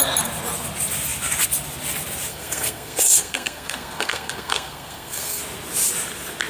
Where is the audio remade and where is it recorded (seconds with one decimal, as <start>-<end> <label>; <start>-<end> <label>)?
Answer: 0.0-2.3 recorded; 2.3-5.4 remade; 5.4-6.5 recorded